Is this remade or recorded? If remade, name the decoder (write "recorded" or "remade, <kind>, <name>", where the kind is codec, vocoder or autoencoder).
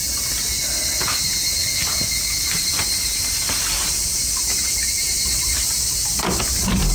recorded